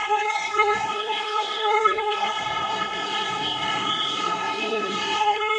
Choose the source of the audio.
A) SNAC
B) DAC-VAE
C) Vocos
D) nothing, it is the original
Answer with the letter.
A